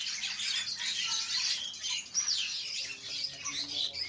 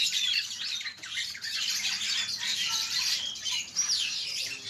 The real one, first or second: first